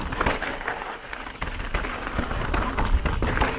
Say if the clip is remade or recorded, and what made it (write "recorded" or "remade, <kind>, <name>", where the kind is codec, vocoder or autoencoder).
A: recorded